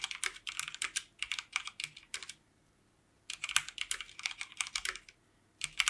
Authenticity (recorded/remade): recorded